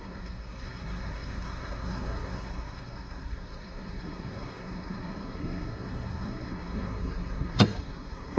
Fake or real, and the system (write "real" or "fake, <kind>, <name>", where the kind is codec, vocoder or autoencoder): fake, codec, SNAC